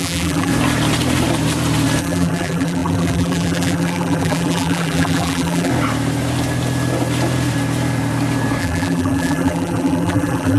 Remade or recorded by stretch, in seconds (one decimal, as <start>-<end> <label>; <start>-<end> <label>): 0.0-0.5 remade; 0.5-2.0 recorded; 2.0-5.7 remade; 5.7-8.6 recorded; 8.6-10.6 remade